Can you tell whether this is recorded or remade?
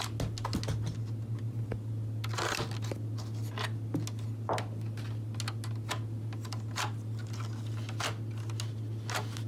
recorded